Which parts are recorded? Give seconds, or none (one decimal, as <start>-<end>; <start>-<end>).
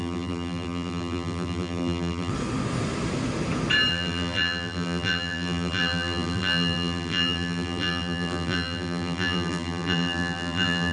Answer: 2.3-3.9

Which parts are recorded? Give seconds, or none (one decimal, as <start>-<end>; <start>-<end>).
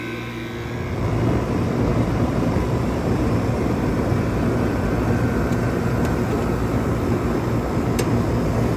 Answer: 0.0-1.9; 6.2-8.8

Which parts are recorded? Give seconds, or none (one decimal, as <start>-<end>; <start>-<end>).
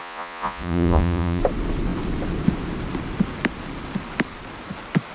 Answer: 1.4-5.1